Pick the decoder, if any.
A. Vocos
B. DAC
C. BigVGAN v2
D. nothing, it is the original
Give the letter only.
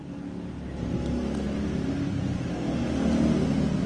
D